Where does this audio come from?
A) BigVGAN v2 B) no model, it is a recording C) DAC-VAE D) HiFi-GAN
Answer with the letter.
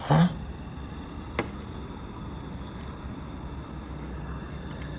B